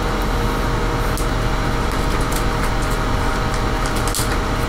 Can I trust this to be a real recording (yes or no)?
yes